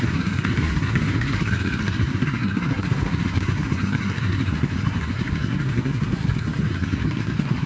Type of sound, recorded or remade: remade